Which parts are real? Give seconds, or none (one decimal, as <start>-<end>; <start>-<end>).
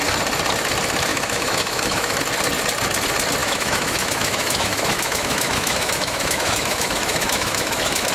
0.0-1.1; 2.2-3.4